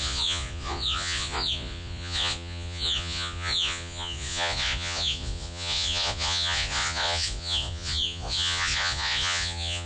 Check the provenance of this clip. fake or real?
fake